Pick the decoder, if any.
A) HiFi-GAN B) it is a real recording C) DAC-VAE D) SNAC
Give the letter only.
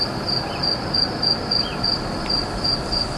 B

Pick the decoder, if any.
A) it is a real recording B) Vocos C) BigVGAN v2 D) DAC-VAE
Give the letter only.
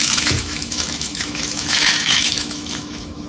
D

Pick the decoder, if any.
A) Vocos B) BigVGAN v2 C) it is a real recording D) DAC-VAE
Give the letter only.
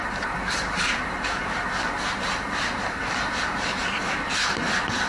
B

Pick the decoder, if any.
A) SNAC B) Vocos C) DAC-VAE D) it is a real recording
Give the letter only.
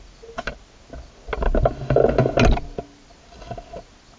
D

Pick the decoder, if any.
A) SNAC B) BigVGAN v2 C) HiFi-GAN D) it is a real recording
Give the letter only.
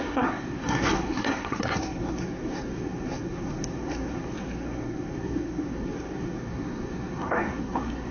A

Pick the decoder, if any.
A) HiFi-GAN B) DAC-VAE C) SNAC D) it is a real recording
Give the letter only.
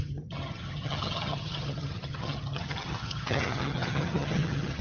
A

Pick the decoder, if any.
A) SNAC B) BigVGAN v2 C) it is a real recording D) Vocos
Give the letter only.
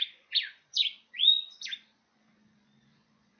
D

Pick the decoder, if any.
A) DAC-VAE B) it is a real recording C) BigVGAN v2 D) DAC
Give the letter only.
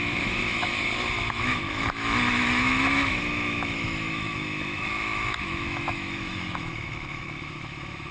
A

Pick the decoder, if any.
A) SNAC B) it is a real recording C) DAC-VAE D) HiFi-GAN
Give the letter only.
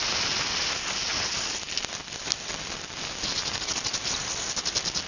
B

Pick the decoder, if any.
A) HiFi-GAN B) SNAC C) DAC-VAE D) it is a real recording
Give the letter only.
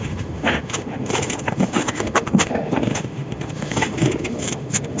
C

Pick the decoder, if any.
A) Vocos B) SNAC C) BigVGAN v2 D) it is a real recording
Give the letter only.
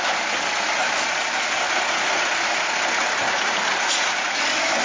D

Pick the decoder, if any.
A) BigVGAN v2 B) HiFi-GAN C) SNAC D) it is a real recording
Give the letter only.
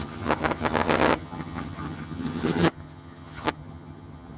B